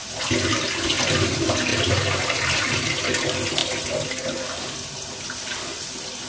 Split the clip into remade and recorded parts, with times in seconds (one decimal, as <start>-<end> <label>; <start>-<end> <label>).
0.0-1.7 recorded; 1.7-3.0 remade; 3.0-6.3 recorded